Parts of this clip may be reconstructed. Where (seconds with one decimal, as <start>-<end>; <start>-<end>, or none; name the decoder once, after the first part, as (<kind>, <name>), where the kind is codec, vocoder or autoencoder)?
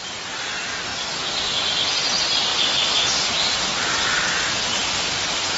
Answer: none